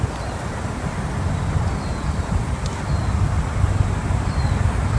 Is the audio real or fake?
real